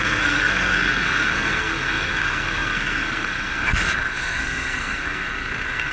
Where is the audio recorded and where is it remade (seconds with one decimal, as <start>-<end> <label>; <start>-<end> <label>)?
0.0-5.9 remade